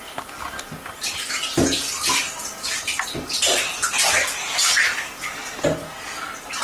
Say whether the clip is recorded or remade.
recorded